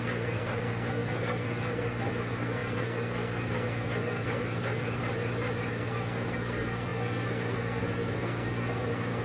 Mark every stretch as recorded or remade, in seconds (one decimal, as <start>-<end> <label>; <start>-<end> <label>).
0.0-5.0 remade; 5.0-5.7 recorded; 5.7-9.2 remade